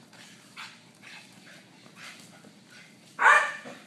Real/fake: real